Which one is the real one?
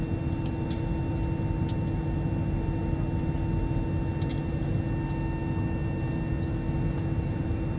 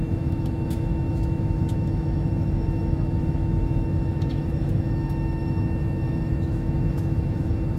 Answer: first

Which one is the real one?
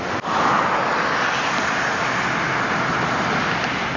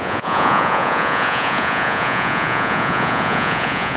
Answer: first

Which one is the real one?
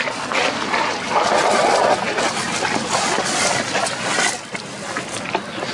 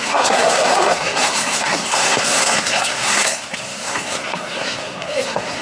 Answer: first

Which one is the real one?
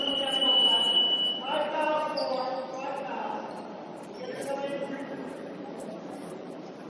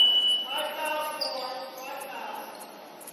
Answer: second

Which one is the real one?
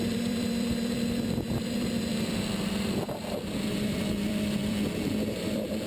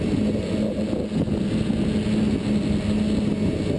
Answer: second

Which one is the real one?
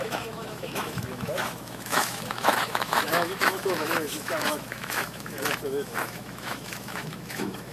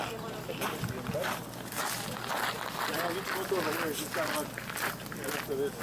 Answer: second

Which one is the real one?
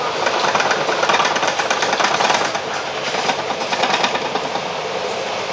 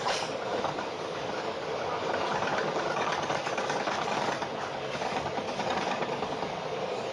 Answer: first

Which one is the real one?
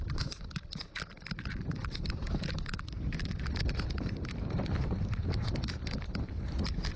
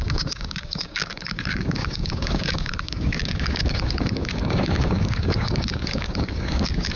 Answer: first